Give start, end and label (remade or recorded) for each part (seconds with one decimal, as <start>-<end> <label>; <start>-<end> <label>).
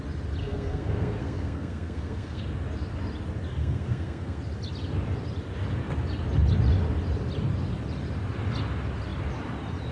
0.0-0.4 recorded; 0.4-2.4 remade; 2.4-3.6 recorded; 3.6-4.4 remade; 4.4-9.9 recorded